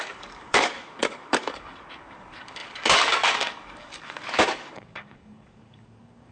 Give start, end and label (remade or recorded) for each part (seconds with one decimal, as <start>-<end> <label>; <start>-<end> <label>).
0.0-6.3 remade